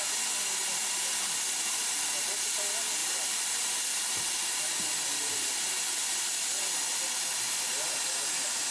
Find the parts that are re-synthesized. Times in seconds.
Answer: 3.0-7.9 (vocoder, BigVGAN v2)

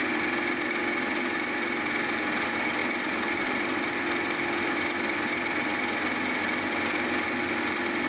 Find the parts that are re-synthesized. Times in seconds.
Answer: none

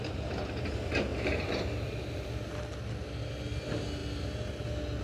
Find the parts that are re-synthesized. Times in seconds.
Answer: 1.1-2.3 (vocoder, BigVGAN v2)

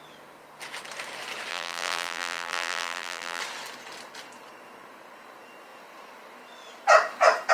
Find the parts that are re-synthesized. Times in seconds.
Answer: 1.5-3.4 (vocoder, BigVGAN v2)

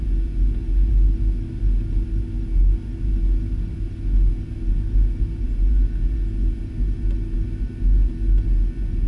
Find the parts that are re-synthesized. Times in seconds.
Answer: none